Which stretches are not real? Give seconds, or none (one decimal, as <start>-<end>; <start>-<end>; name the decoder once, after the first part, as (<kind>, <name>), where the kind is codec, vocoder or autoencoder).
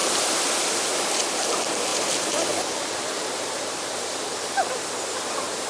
0.0-0.7 (vocoder, BigVGAN v2); 1.9-5.3